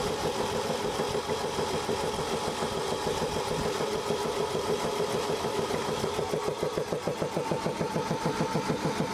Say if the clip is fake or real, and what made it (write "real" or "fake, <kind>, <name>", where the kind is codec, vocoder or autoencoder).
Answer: real